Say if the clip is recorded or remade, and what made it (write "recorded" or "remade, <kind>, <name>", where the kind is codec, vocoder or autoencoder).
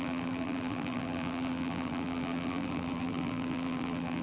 remade, vocoder, BigVGAN v2